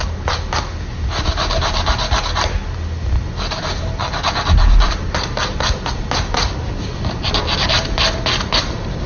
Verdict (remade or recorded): recorded